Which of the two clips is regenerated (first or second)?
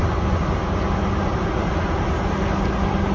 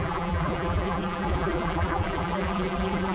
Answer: second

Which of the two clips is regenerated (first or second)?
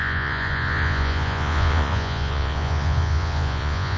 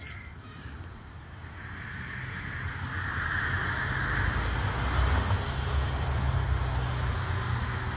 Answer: first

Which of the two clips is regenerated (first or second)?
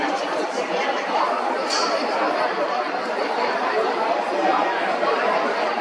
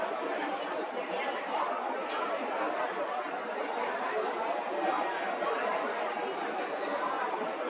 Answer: first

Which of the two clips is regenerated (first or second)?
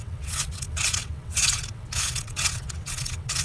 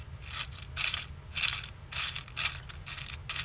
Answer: first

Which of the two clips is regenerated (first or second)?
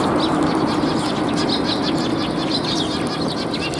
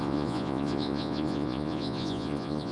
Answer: second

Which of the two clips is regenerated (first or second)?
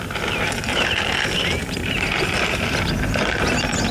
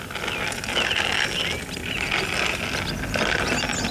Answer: first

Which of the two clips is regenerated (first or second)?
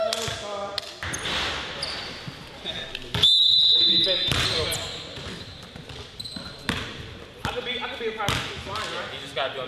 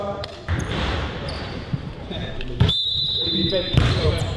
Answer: second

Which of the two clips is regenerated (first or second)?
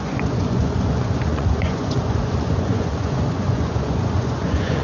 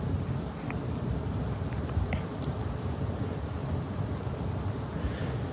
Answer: first